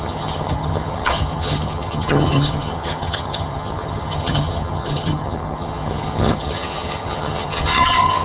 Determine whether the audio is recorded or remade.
remade